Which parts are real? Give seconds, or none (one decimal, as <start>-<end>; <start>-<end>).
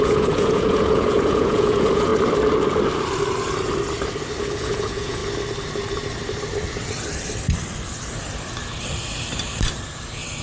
2.1-4.4; 5.2-10.4